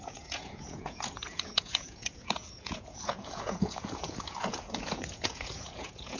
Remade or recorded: remade